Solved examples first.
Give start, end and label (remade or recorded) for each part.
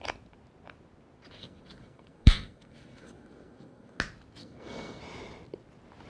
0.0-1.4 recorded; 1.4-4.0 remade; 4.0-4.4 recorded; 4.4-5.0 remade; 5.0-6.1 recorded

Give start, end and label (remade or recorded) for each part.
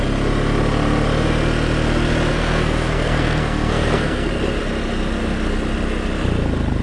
0.0-2.3 recorded; 2.3-4.3 remade; 4.3-6.8 recorded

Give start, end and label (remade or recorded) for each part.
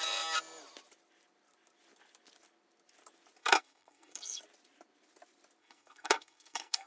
0.0-3.4 recorded; 3.4-4.4 remade; 4.4-5.6 recorded; 5.6-6.9 remade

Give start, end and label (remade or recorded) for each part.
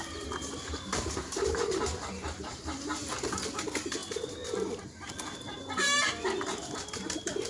0.0-7.5 recorded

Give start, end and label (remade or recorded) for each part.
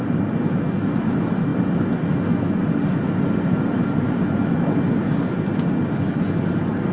0.0-6.9 recorded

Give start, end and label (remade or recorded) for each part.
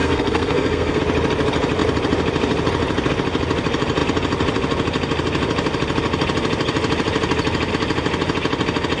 0.0-1.0 remade; 1.0-9.0 recorded